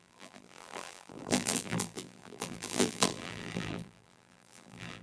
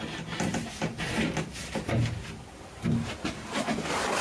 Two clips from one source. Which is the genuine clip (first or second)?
second